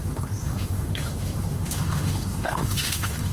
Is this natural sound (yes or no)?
no